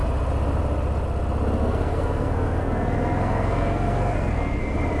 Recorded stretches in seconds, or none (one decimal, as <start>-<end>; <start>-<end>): 0.0-1.6; 4.6-5.0